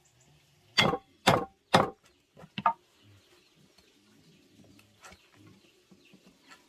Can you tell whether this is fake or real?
real